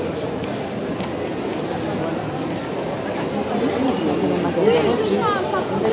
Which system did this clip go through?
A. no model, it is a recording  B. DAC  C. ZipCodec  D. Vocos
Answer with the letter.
A